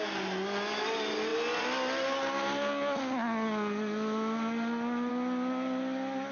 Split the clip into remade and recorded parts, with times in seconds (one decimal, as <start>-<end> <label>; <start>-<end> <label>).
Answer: 0.0-6.3 recorded